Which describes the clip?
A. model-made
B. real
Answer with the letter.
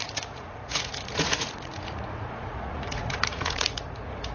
A